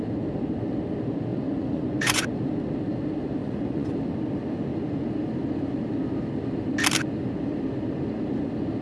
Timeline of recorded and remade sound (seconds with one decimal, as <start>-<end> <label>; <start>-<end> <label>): 0.0-1.3 recorded; 1.3-2.3 remade; 2.3-3.4 recorded; 3.4-3.9 remade; 3.9-8.8 recorded